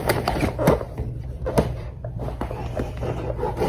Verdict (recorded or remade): recorded